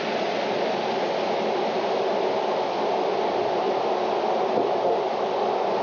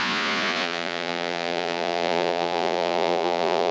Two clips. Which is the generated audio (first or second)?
second